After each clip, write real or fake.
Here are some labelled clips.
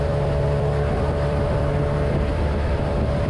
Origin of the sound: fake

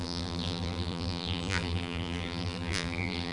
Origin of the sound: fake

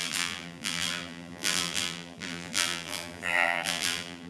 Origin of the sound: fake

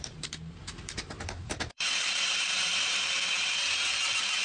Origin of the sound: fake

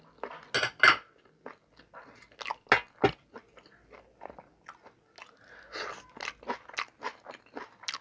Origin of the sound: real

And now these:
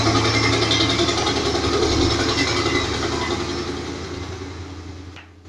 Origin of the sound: real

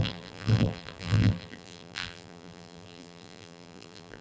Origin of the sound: fake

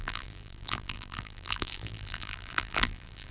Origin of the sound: fake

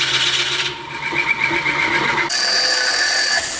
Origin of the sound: real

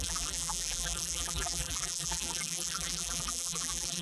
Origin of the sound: fake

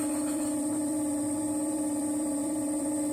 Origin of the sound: fake